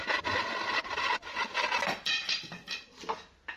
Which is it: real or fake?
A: real